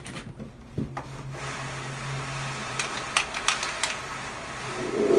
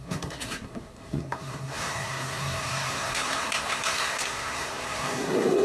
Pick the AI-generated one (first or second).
second